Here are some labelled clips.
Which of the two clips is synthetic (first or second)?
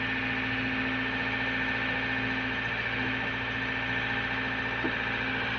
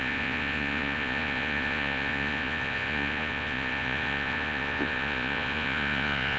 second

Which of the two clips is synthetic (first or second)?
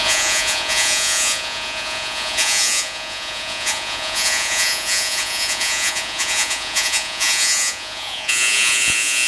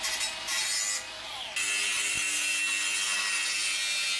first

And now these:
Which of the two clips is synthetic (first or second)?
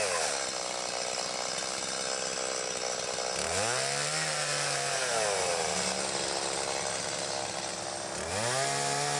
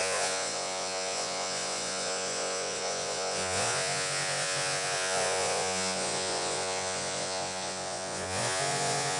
second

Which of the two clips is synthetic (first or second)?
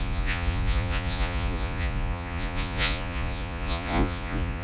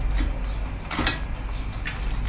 first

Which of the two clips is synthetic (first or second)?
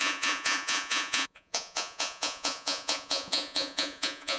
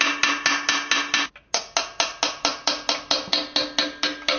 first